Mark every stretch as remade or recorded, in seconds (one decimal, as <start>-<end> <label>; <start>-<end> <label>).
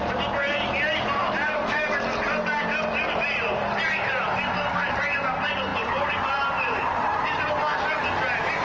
0.0-1.2 recorded; 1.2-1.9 remade; 1.9-8.6 recorded